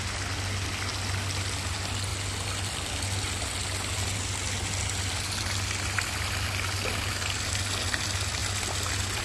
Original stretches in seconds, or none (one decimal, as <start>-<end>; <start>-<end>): 0.0-9.2